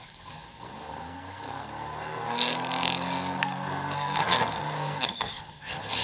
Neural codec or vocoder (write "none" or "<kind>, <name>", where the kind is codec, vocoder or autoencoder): codec, SNAC